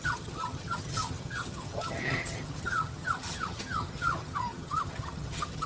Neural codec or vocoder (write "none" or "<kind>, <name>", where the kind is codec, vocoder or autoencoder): vocoder, HiFi-GAN